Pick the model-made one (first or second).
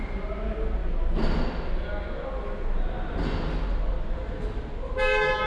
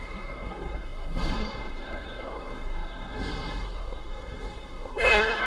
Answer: second